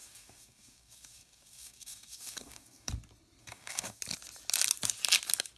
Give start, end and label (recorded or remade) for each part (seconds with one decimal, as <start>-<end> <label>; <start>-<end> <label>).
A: 0.0-2.9 remade; 2.9-3.4 recorded; 3.4-4.0 remade; 4.0-5.6 recorded